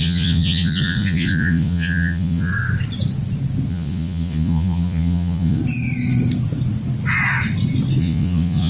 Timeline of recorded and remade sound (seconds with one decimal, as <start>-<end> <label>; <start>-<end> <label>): 0.0-2.5 remade; 2.5-3.7 recorded; 3.7-5.6 remade; 5.6-8.0 recorded; 8.0-8.7 remade